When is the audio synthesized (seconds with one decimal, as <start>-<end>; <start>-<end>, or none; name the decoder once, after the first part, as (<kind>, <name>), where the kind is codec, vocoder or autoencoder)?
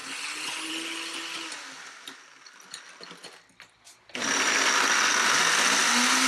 none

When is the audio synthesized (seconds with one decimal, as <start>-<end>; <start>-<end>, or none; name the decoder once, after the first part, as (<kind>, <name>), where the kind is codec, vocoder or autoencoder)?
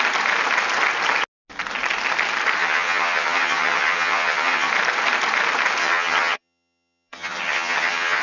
2.6-4.7 (vocoder, HiFi-GAN); 5.8-8.2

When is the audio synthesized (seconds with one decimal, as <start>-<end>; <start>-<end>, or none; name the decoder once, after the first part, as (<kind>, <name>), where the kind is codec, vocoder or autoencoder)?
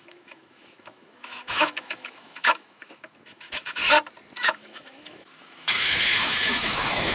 0.0-3.8 (autoencoder, DAC-VAE); 4.4-7.1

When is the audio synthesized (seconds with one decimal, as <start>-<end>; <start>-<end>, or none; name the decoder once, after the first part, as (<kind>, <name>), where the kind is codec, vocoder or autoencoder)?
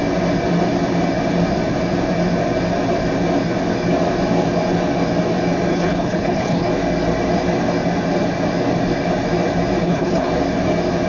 5.7-6.7 (codec, HILCodec); 9.8-10.3